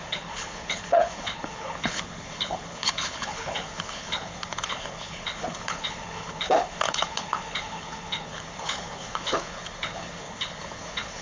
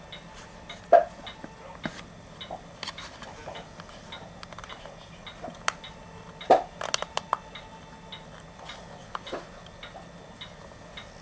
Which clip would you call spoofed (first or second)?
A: first